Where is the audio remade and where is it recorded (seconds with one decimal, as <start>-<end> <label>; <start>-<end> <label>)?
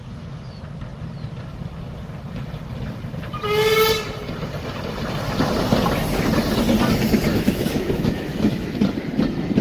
0.0-7.3 recorded; 7.3-8.8 remade; 8.8-9.6 recorded